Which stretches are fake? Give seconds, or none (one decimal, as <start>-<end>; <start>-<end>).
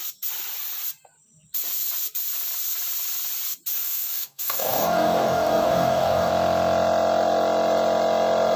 3.7-6.3